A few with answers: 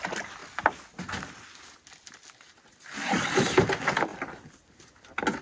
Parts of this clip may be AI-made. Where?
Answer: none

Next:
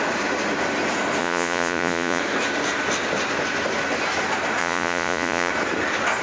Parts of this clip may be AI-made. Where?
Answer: 1.2-2.2 (vocoder, Vocos); 4.6-5.5

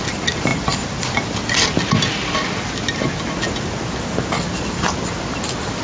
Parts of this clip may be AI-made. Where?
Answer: none

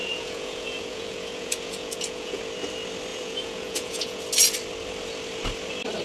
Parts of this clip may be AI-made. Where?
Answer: 0.0-2.4 (vocoder, Vocos); 3.1-4.2

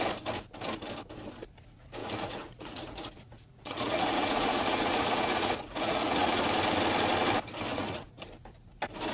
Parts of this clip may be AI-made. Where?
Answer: 2.0-6.4 (vocoder, Vocos); 7.7-8.2

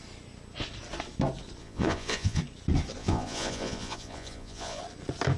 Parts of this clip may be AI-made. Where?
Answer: 1.6-2.4 (vocoder, Vocos); 3.0-4.8

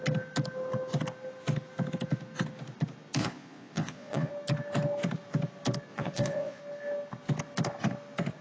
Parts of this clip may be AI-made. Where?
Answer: 3.2-4.3 (vocoder, Vocos); 5.9-6.6

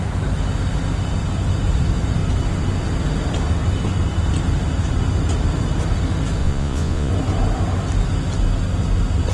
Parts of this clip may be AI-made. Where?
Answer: 6.4-7.1 (vocoder, Vocos)